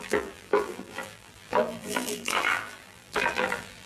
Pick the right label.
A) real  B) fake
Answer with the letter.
B